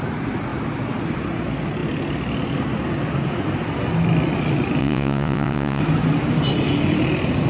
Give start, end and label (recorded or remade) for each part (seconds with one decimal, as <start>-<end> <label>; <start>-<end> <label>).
0.0-4.8 recorded; 4.8-5.8 remade; 5.8-7.5 recorded